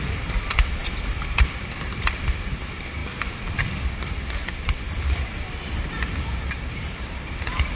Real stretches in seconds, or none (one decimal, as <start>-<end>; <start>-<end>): 0.0-0.8; 1.5-3.0; 3.9-7.8